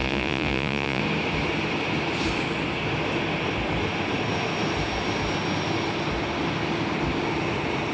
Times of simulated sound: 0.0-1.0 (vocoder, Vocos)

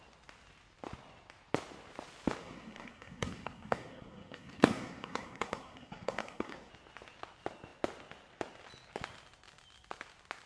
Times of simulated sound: 2.4-6.7 (codec, SNAC)

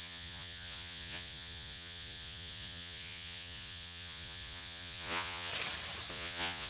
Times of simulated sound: 0.0-5.5 (vocoder, Vocos); 6.1-6.7

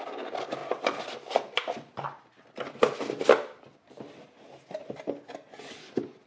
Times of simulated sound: none